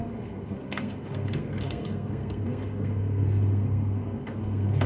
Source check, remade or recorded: remade